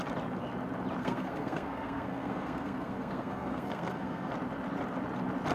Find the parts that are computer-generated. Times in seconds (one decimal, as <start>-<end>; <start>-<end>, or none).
1.0-4.3